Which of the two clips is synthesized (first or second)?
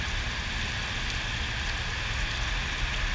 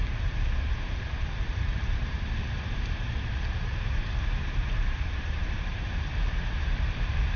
second